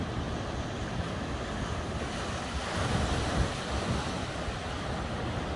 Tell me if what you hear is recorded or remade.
recorded